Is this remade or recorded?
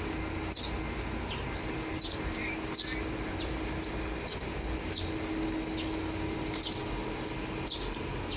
recorded